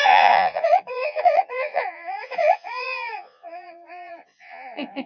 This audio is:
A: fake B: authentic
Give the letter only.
A